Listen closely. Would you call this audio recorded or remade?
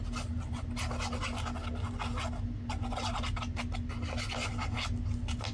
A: recorded